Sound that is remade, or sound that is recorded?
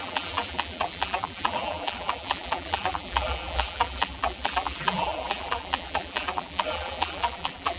remade